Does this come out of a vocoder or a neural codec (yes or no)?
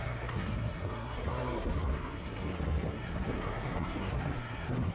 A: yes